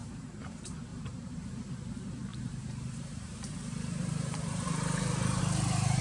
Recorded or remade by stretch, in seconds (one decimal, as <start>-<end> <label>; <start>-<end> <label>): 0.0-0.5 remade; 0.5-0.9 recorded; 0.9-1.7 remade; 1.7-2.3 recorded; 2.3-5.4 remade; 5.4-6.0 recorded